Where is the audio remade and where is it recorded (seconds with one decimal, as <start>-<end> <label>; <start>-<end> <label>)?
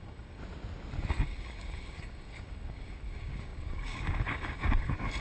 0.0-0.4 remade; 0.4-1.1 recorded; 1.1-5.2 remade